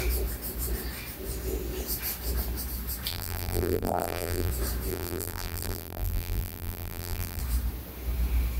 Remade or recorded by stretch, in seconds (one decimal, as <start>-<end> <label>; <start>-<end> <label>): 0.0-3.1 recorded; 3.1-4.5 remade; 4.5-4.9 recorded; 4.9-7.4 remade; 7.4-8.6 recorded